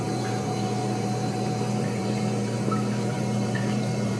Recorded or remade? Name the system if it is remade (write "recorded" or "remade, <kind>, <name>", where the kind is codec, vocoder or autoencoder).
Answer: remade, vocoder, BigVGAN v2